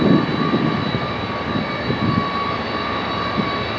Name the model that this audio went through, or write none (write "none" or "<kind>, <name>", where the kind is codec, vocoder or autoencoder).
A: none